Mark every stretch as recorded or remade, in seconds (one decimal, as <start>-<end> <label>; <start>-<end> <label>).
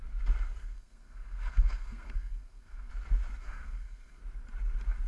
0.0-0.6 recorded; 0.6-2.9 remade; 2.9-3.4 recorded; 3.4-4.2 remade; 4.2-5.1 recorded